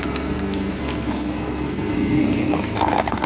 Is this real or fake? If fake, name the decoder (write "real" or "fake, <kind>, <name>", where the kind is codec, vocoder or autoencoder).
fake, codec, SNAC